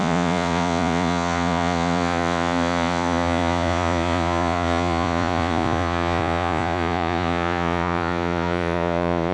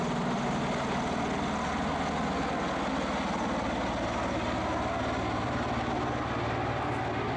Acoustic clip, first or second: second